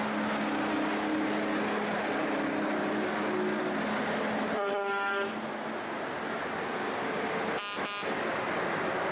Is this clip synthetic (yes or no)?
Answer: no